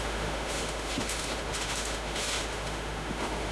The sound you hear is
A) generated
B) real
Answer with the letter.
A